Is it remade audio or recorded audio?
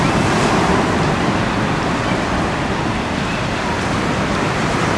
recorded